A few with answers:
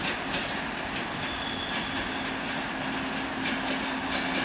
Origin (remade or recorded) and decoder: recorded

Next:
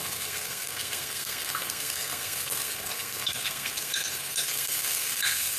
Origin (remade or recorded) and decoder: remade, codec, SNAC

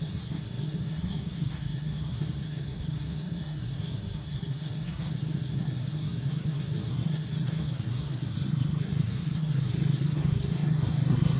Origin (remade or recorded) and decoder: remade, codec, SNAC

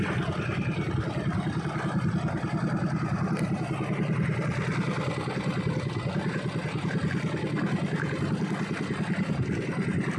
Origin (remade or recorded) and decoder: recorded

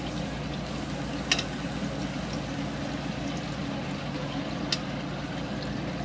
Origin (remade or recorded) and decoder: recorded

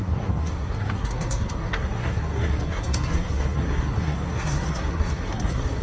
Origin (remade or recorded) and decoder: remade, codec, SNAC